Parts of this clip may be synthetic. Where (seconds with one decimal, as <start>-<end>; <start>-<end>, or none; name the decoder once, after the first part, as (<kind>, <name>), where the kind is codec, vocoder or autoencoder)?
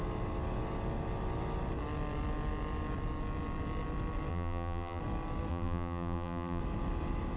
4.3-5.0 (vocoder, BigVGAN v2); 5.5-6.6